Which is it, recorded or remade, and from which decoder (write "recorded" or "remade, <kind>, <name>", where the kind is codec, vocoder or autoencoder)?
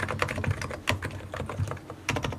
recorded